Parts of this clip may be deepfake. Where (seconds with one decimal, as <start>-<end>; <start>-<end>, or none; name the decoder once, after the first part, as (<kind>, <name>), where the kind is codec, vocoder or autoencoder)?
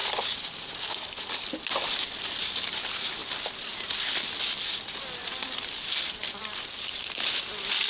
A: none